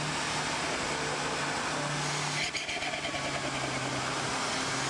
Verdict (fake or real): real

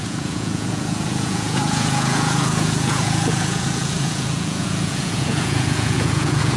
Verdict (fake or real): fake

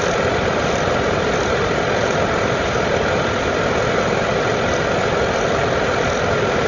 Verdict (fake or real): real